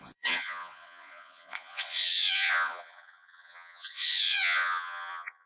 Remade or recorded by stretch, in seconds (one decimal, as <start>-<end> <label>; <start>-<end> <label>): 0.0-5.5 remade